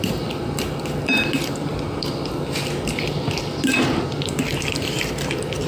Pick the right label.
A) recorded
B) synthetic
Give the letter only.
B